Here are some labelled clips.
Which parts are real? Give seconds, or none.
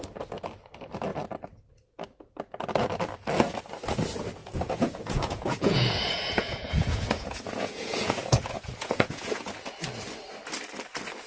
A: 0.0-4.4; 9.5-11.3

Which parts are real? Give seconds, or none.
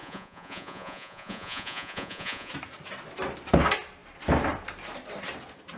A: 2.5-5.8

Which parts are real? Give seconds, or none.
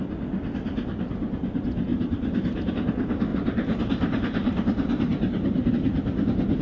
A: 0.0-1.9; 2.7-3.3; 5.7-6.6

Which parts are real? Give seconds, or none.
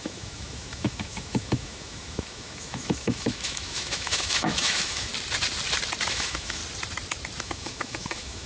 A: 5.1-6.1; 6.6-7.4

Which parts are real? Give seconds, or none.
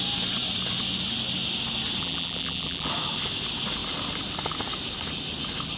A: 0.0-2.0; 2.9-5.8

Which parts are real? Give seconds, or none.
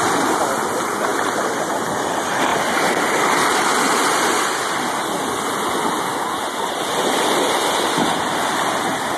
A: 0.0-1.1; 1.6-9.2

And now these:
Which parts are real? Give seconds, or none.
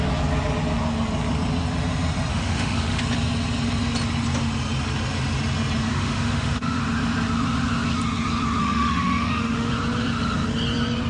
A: 0.0-2.3; 3.0-5.9; 6.8-8.6; 9.7-11.1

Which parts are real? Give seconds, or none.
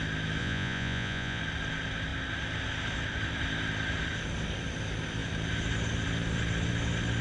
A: 0.0-0.4; 1.4-7.2